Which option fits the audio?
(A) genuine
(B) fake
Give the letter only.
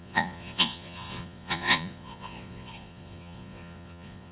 B